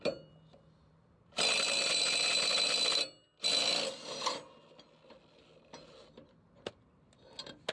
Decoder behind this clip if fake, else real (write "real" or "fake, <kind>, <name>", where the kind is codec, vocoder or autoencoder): real